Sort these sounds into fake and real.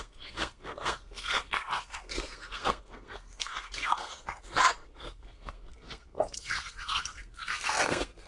fake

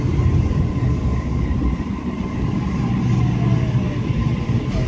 real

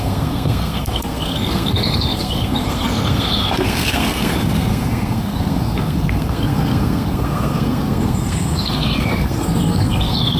fake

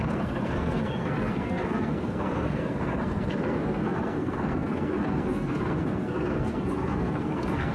fake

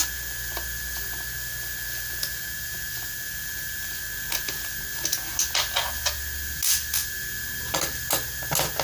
real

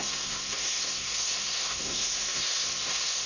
fake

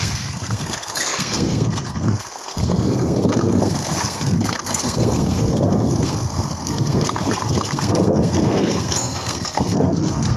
fake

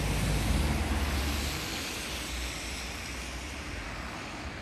real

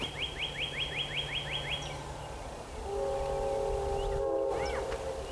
real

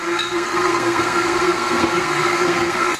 fake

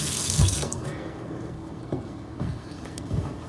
fake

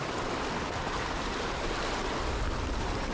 real